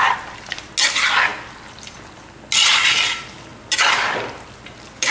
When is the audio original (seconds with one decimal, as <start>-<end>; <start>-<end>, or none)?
0.0-5.1